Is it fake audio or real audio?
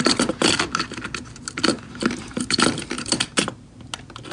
real